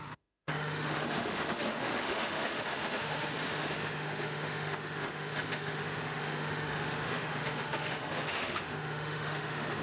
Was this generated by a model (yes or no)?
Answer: yes